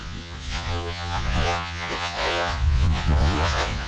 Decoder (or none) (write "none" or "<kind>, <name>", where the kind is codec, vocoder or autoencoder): vocoder, Vocos